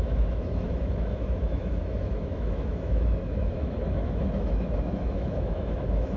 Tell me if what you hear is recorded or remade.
remade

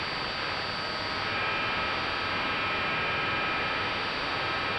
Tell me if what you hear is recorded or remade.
recorded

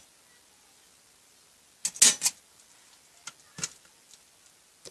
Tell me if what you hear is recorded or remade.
recorded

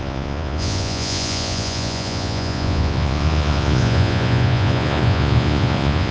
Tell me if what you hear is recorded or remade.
remade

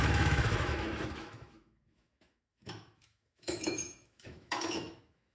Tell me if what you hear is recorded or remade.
remade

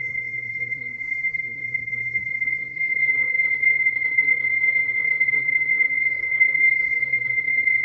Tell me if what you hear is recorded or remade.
remade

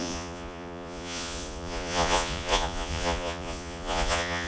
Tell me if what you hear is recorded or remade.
remade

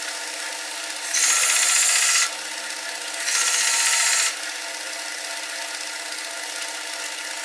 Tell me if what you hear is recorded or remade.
recorded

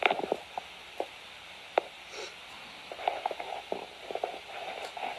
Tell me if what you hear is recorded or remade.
recorded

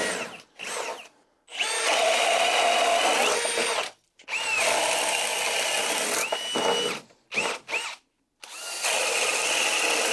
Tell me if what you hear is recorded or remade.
recorded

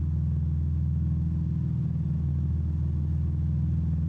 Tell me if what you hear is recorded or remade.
recorded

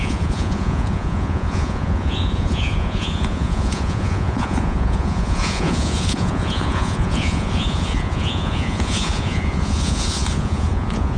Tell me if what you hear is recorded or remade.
remade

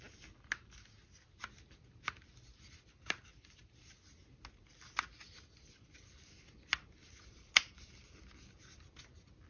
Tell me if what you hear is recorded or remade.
recorded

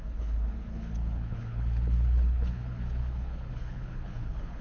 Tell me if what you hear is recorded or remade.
remade